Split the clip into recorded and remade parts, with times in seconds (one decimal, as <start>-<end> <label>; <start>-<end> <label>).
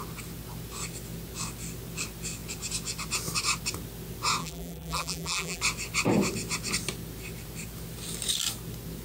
0.0-4.4 recorded; 4.4-5.6 remade; 5.6-9.0 recorded